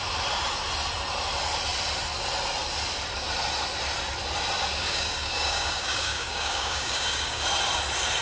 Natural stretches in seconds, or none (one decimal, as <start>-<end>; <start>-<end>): 0.0-4.8; 7.4-8.2

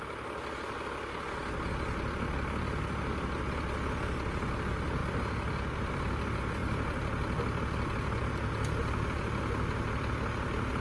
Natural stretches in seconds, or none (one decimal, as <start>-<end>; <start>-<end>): 0.0-10.8

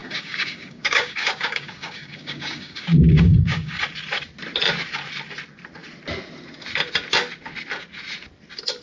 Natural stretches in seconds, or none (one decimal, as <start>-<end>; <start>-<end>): 3.8-8.8

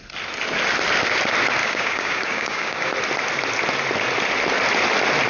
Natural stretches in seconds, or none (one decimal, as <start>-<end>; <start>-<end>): 0.0-1.6; 2.9-5.3

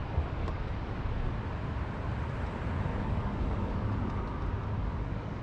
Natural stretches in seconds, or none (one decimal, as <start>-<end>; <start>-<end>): 1.0-2.9; 4.3-4.8

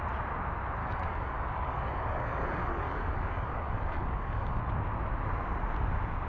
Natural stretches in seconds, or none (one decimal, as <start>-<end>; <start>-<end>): 0.0-0.8; 4.6-6.3